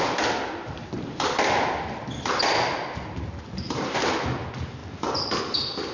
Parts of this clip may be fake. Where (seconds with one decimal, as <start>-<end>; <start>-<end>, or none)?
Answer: none